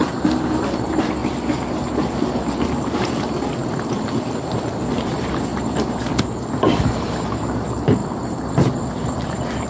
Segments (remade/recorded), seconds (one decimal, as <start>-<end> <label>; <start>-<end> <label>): 0.0-1.2 remade; 1.2-2.8 recorded; 2.8-9.7 remade